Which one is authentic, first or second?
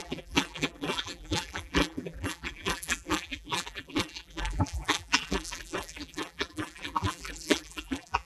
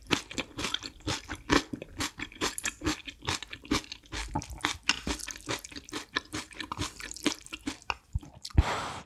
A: second